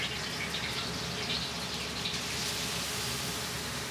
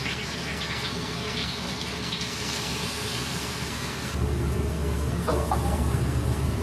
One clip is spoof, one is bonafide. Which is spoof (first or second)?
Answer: second